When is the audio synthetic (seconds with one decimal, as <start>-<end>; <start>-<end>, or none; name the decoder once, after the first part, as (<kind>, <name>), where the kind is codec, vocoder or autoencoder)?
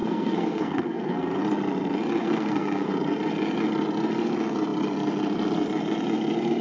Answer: 0.0-1.4 (codec, SNAC); 2.2-2.9